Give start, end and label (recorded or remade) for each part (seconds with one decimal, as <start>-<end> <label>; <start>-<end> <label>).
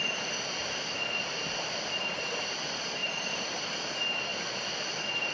0.0-0.6 recorded; 0.6-2.2 remade; 2.2-3.0 recorded; 3.0-3.7 remade; 3.7-5.3 recorded